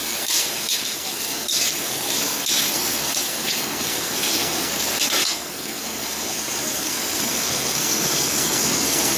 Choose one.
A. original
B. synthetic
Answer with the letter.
B